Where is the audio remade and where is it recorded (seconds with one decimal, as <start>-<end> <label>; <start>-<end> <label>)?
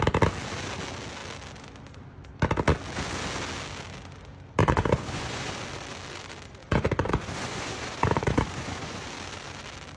0.0-4.6 recorded; 4.6-5.5 remade; 5.5-6.6 recorded; 6.6-9.1 remade; 9.1-10.0 recorded